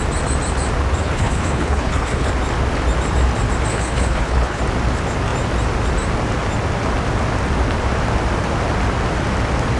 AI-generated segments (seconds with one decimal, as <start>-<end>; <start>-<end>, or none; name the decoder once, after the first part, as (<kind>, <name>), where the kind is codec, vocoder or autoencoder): 1.0-2.3 (codec, HILCodec); 3.7-4.6